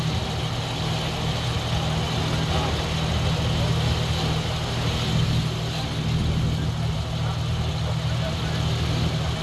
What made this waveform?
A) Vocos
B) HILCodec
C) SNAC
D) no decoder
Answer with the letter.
D